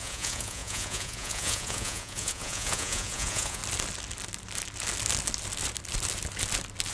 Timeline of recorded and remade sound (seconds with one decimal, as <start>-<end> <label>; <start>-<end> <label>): 0.0-3.6 remade; 3.6-6.9 recorded